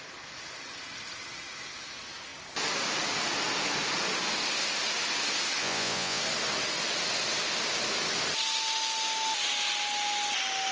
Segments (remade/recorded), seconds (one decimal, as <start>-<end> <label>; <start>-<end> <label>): 0.0-5.6 recorded; 5.6-6.2 remade; 6.2-10.7 recorded